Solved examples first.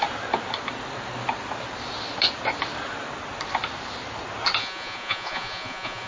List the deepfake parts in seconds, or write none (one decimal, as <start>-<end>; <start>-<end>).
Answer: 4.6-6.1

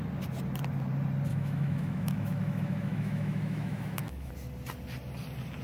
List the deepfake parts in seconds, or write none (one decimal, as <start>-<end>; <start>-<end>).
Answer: 1.3-4.3

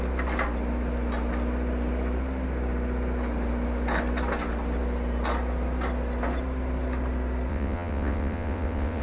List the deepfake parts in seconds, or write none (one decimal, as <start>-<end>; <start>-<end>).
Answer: 7.5-9.0